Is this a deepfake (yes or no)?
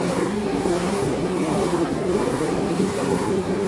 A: yes